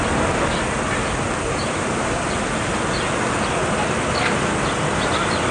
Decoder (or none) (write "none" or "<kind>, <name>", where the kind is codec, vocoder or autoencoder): none